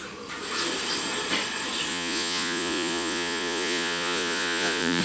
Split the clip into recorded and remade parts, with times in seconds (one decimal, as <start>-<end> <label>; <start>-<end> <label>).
0.0-1.9 recorded; 1.9-5.0 remade